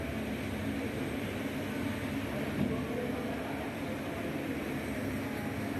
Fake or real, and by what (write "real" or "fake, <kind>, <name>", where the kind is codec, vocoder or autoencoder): real